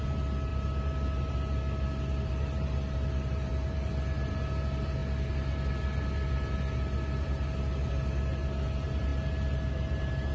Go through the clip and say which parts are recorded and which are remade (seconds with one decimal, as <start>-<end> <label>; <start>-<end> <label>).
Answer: 0.0-10.3 recorded